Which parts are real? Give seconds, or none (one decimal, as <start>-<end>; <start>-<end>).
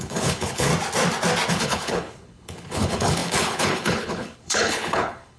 0.7-1.5